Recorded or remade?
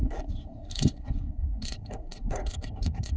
remade